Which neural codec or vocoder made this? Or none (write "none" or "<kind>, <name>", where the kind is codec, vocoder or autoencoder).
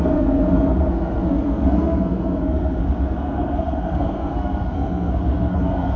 codec, SNAC